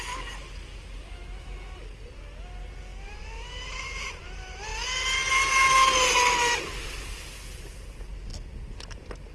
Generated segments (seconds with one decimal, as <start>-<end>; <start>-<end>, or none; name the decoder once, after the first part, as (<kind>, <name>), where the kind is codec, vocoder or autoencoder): none